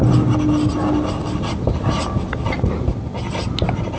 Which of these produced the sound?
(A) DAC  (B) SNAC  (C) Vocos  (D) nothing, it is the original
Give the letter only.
D